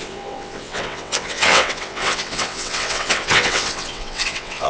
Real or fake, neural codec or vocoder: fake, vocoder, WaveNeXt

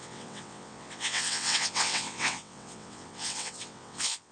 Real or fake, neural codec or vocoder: fake, vocoder, WaveNeXt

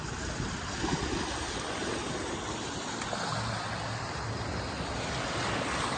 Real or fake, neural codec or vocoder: real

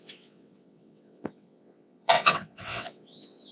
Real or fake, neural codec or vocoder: fake, vocoder, WaveNeXt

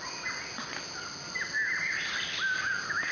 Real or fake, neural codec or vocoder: real